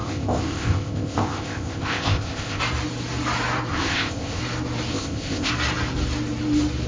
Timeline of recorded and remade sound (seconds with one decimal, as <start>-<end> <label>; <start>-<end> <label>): 0.0-2.6 remade; 2.6-3.7 recorded; 3.7-4.4 remade; 4.4-4.9 recorded; 4.9-5.5 remade; 5.5-6.9 recorded